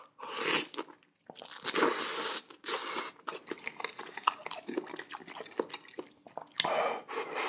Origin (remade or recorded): recorded